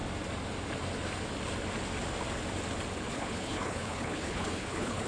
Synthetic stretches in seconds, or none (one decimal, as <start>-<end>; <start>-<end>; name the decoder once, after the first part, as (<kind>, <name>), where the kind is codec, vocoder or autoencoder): 3.1-5.1 (codec, HILCodec)